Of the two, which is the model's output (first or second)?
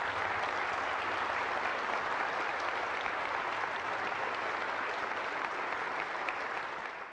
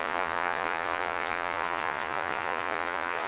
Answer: second